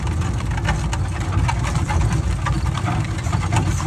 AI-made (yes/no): no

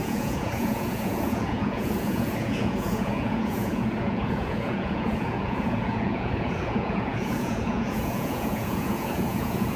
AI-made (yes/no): yes